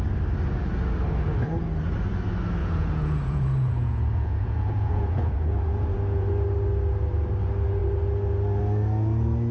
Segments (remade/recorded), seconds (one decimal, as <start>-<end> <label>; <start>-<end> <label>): 0.0-2.6 recorded; 2.6-6.3 remade; 6.3-9.5 recorded